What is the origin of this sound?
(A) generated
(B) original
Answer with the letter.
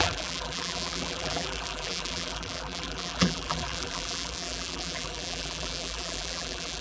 A